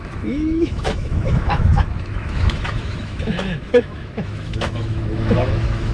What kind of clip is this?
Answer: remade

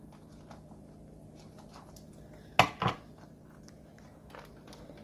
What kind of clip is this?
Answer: recorded